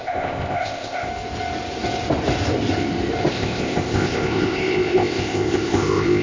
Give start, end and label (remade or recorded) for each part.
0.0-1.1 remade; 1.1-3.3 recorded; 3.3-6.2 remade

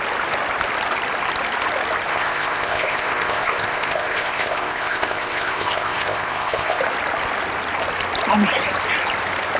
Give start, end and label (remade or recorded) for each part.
0.0-2.1 recorded; 2.1-6.8 remade; 6.8-9.6 recorded

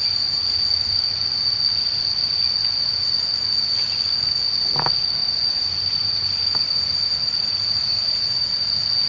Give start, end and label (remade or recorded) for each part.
0.0-5.2 recorded; 5.2-7.1 remade; 7.1-7.9 recorded; 7.9-8.7 remade; 8.7-9.1 recorded

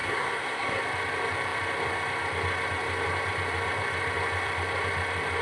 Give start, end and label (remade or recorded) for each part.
0.0-0.8 remade; 0.8-5.4 recorded

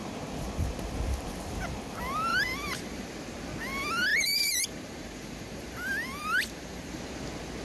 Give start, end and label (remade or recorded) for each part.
0.0-2.3 recorded; 2.3-3.1 remade; 3.1-4.1 recorded; 4.1-7.0 remade; 7.0-7.6 recorded